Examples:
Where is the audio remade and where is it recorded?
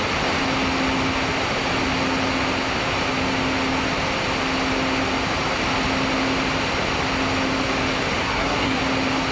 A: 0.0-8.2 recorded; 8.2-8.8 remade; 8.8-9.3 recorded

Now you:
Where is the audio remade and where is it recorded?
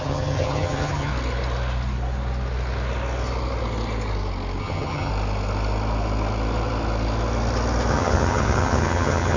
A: 0.0-1.1 remade; 1.1-4.6 recorded; 4.6-5.1 remade; 5.1-7.9 recorded; 7.9-9.4 remade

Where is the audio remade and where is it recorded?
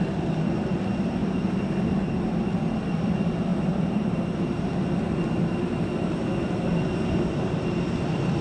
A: 0.0-1.2 recorded; 1.2-2.3 remade; 2.3-3.5 recorded; 3.5-4.7 remade; 4.7-8.4 recorded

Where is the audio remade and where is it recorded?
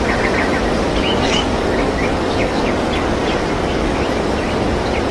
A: 0.0-0.9 recorded; 0.9-4.0 remade; 4.0-5.1 recorded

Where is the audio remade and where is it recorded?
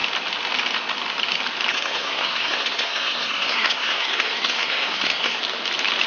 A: 0.0-1.7 recorded; 1.7-5.4 remade; 5.4-6.1 recorded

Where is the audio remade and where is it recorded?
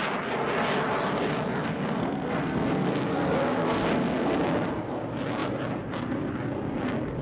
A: 0.0-1.6 recorded; 1.6-4.4 remade; 4.4-7.2 recorded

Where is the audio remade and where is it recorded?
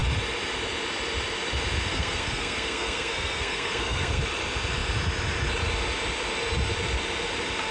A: 0.0-1.9 recorded; 1.9-4.2 remade; 4.2-7.7 recorded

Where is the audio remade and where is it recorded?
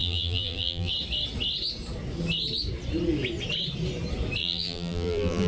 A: 0.0-0.9 remade; 0.9-4.4 recorded; 4.4-5.5 remade